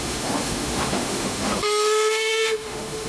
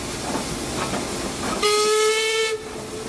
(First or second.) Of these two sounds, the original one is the second